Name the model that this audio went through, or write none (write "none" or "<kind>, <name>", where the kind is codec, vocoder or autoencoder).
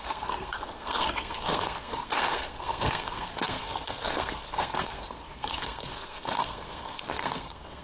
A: codec, SNAC